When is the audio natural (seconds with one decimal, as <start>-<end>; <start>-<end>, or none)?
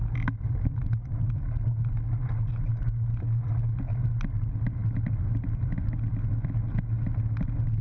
0.0-7.8